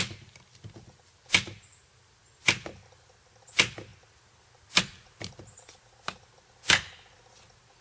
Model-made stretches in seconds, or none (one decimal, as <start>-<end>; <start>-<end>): none